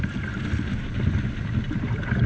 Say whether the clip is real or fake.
real